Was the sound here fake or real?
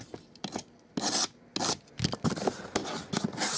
real